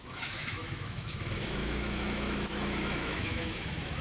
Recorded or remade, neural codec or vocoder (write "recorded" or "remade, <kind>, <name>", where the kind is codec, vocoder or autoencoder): remade, autoencoder, DAC-VAE